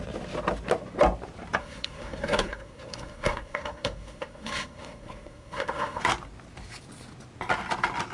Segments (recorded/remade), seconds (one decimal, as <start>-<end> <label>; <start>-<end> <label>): 0.0-1.6 recorded; 1.6-6.0 remade; 6.0-8.1 recorded